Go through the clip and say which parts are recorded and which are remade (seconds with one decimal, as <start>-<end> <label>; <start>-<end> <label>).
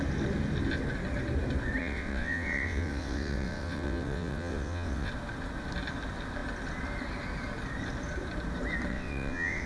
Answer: 0.0-1.8 recorded; 1.8-5.1 remade; 5.1-8.9 recorded; 8.9-9.7 remade